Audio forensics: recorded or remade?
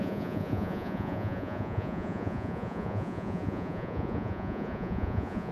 remade